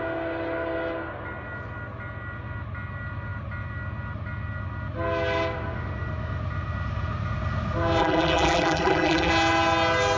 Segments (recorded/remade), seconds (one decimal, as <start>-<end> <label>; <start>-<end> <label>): 0.0-8.0 recorded; 8.0-9.3 remade; 9.3-10.2 recorded